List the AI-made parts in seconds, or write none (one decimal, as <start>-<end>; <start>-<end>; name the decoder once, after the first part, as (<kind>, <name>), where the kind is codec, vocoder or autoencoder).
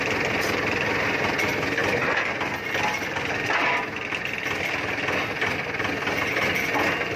none